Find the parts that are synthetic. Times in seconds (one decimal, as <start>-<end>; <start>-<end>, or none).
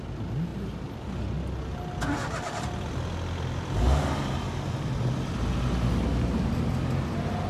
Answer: none